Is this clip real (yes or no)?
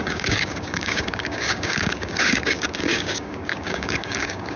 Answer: no